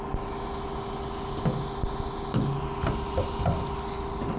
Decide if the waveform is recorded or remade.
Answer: recorded